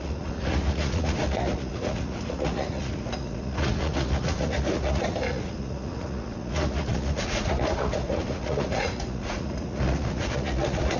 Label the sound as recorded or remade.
remade